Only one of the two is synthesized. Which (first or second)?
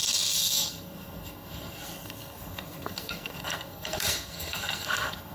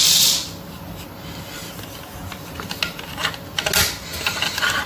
first